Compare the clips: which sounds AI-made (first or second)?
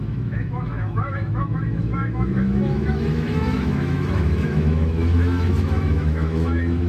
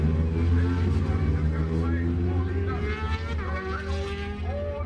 first